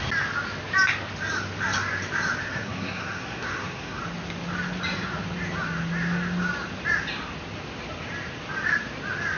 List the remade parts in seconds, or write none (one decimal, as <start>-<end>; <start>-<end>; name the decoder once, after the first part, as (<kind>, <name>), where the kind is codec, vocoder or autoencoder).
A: 2.4-4.0 (codec, SNAC)